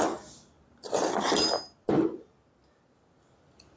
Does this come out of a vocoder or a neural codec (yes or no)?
no